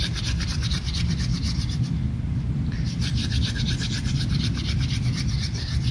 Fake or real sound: real